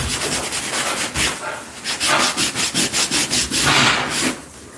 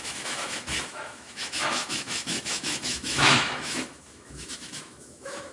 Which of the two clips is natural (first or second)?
first